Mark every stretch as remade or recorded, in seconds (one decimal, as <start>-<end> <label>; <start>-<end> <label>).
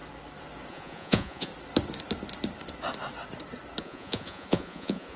0.0-0.7 recorded; 0.7-1.5 remade; 1.5-3.8 recorded; 3.8-5.2 remade